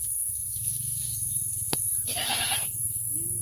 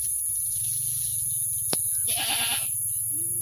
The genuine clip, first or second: second